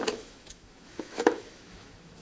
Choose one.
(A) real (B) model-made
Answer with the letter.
B